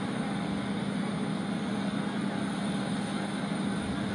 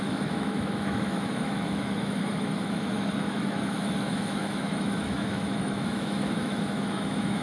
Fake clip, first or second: second